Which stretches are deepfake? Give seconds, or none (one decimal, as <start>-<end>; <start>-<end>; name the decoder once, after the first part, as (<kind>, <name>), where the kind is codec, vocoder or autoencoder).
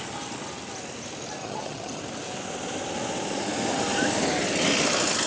1.4-2.0 (vocoder, HiFi-GAN)